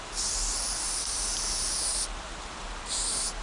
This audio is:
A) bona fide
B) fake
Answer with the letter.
A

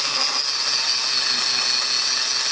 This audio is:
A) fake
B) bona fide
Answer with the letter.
B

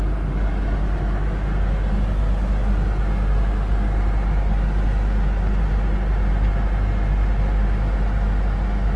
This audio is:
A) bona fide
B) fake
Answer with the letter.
A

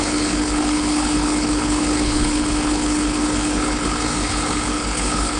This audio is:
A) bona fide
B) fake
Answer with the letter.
B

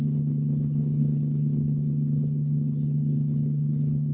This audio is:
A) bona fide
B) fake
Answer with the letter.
B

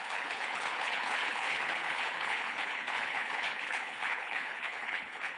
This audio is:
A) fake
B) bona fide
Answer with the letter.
A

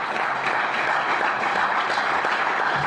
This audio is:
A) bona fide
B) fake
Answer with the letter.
A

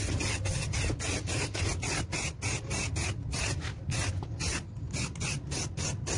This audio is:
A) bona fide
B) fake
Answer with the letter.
A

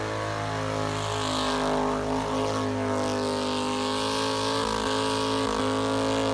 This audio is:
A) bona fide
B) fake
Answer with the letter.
A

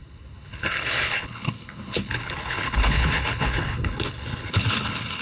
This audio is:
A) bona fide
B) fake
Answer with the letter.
B